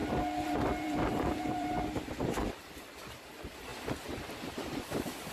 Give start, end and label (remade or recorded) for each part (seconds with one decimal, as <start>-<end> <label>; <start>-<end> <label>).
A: 0.0-5.3 remade

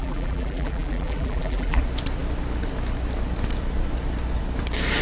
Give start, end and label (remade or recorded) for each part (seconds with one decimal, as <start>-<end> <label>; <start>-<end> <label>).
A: 0.0-1.8 remade; 1.8-5.0 recorded